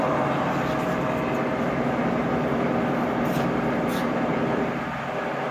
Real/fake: real